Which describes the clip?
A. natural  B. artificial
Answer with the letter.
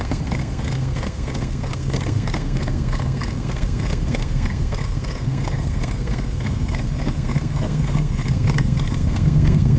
B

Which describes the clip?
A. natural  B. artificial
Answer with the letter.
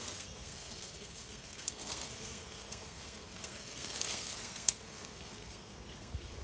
B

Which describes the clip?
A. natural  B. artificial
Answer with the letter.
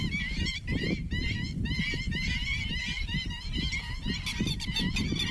A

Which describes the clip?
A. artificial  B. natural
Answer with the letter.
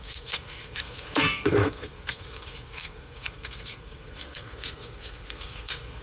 A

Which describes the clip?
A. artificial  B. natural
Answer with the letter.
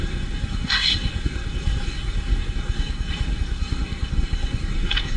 A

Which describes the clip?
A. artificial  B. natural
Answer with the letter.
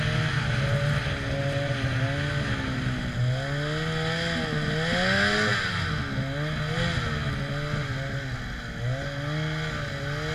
B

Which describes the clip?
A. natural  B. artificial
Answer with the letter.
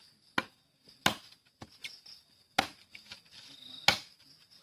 A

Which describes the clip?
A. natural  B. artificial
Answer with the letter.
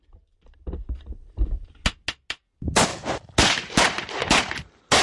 A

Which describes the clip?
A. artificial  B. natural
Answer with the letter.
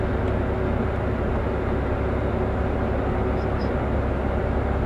B